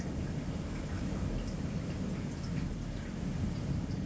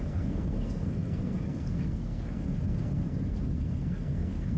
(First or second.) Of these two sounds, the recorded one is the first